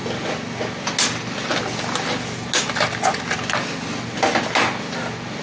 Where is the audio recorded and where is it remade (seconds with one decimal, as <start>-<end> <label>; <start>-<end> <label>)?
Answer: 0.0-5.4 recorded